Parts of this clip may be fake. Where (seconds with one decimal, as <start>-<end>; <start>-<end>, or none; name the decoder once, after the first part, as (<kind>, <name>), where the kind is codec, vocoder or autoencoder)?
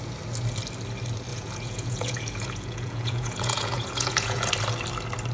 1.3-4.5 (vocoder, Vocos)